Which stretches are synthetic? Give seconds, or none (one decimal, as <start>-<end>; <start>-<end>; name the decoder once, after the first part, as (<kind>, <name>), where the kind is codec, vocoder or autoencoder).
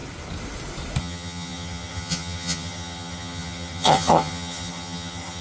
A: 1.0-5.4 (vocoder, HiFi-GAN)